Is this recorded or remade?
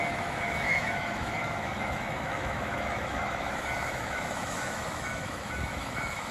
remade